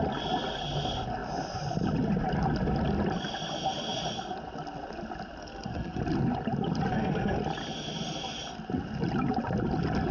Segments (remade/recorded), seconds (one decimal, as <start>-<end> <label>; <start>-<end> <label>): 0.0-5.4 recorded; 5.4-6.0 remade; 6.0-6.9 recorded; 6.9-7.4 remade; 7.4-10.1 recorded

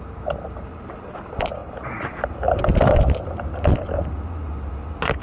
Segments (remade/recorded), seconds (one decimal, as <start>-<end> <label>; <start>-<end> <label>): 0.0-5.2 recorded

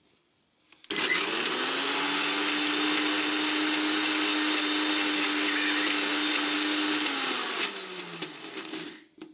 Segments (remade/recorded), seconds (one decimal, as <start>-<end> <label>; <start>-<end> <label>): 0.0-9.3 recorded

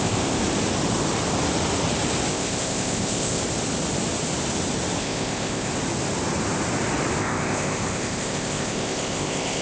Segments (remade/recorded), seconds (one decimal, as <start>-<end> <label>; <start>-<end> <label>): 0.0-0.4 remade; 0.4-2.3 recorded; 2.3-3.4 remade; 3.4-5.0 recorded; 5.0-5.7 remade; 5.7-7.2 recorded; 7.2-9.6 remade